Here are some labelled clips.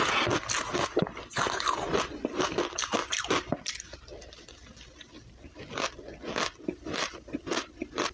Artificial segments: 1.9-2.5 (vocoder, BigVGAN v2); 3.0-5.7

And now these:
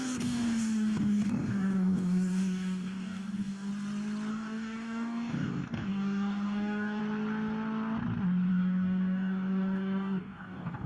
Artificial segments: 0.0-3.7 (codec, DAC); 4.3-7.0; 8.5-10.9

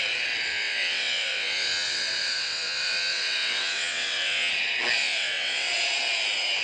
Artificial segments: 0.5-4.5 (vocoder, WaveNeXt); 5.0-5.7